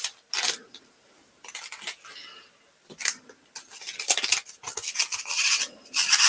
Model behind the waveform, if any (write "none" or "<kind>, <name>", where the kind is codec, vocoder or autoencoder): none